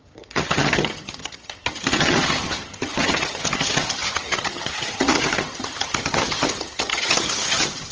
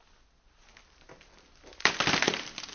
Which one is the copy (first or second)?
first